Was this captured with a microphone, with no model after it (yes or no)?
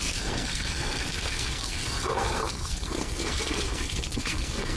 no